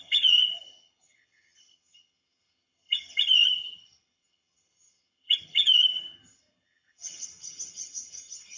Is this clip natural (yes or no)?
no